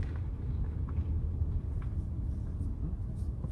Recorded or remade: recorded